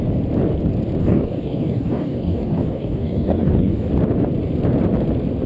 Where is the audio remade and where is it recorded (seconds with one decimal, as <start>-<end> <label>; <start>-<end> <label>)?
0.0-1.0 recorded; 1.0-3.9 remade; 3.9-5.5 recorded